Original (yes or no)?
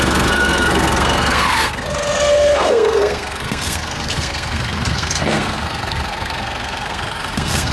no